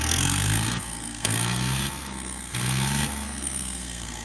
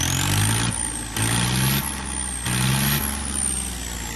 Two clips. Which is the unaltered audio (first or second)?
second